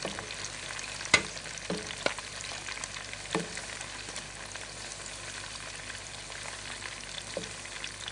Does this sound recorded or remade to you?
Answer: recorded